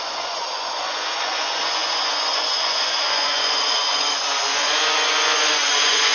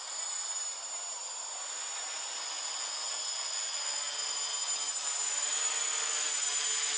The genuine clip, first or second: second